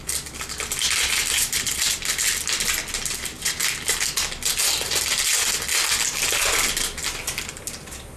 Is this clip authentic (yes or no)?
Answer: yes